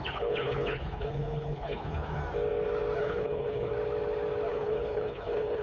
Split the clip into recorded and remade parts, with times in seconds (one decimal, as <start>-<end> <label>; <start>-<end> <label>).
0.0-2.2 remade; 2.2-3.0 recorded; 3.0-3.7 remade; 3.7-4.5 recorded; 4.5-5.6 remade